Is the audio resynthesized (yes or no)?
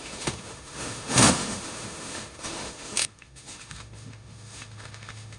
yes